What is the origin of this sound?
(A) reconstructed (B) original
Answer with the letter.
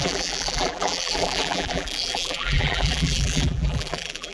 A